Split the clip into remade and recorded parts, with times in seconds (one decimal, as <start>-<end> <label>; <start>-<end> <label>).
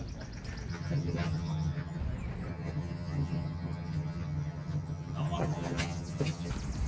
0.0-0.7 recorded; 0.7-2.0 remade; 2.0-2.5 recorded; 2.5-6.5 remade; 6.5-6.9 recorded